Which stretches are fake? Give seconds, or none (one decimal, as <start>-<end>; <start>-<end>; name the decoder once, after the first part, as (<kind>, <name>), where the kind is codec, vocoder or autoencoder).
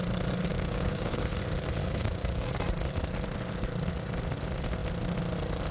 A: 0.5-1.3 (codec, DAC); 1.8-2.5